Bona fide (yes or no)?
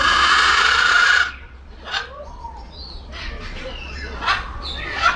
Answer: no